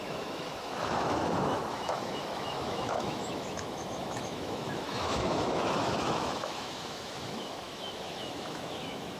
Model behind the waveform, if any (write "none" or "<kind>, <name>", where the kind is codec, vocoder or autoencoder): autoencoder, DAC-VAE